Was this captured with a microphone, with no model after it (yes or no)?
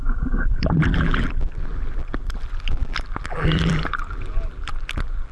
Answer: no